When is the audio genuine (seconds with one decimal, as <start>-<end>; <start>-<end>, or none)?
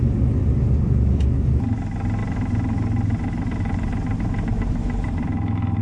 0.0-0.4; 1.0-2.2